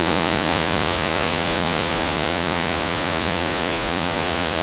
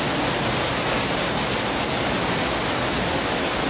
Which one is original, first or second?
second